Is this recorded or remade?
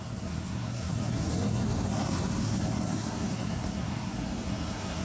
remade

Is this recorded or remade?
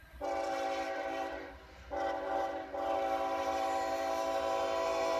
recorded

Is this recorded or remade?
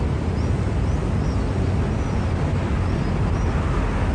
recorded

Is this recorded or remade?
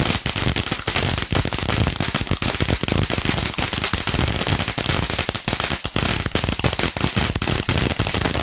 recorded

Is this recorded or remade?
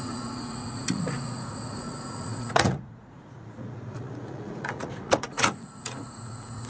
remade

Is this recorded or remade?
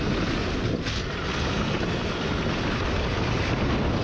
recorded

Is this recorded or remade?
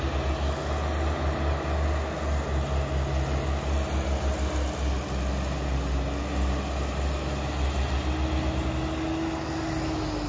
recorded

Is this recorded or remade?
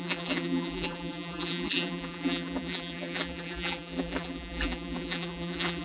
remade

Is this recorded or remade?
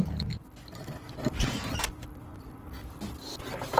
recorded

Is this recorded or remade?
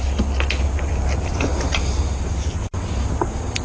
recorded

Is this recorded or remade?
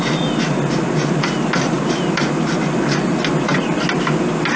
recorded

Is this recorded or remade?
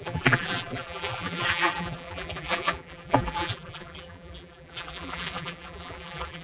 remade